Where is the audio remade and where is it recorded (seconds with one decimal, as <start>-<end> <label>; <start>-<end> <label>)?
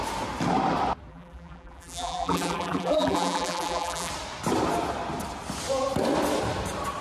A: 0.0-1.1 recorded; 1.1-4.1 remade; 4.1-7.0 recorded